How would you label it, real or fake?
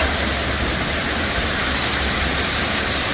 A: real